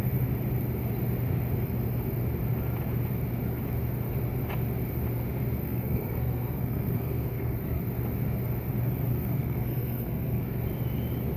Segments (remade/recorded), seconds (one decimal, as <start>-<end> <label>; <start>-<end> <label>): 0.0-5.6 recorded; 5.6-7.8 remade; 7.8-9.1 recorded; 9.1-10.6 remade; 10.6-11.4 recorded